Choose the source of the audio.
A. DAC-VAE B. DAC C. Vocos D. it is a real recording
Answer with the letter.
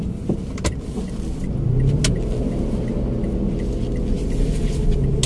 D